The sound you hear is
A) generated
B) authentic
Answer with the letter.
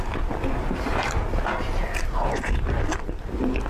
B